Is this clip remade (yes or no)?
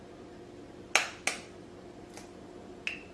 no